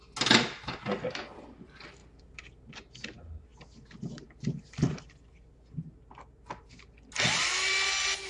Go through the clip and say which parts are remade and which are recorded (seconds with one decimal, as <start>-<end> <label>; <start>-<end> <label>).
0.0-8.3 recorded